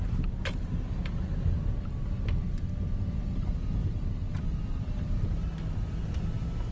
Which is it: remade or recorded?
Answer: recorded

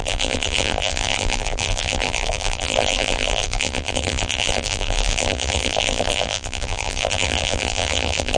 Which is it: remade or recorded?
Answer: remade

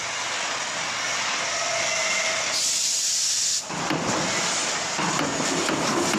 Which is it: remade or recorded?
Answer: recorded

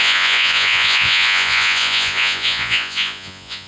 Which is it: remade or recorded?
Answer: remade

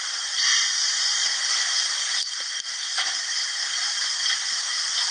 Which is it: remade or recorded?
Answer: recorded